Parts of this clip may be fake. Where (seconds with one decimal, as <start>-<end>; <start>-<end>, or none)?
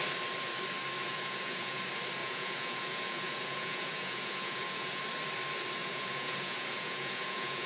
1.0-1.8; 2.2-5.0; 5.8-7.7